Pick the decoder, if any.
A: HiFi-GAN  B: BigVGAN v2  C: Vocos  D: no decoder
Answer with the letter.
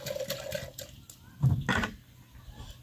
D